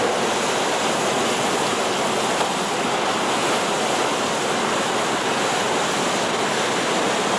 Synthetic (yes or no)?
no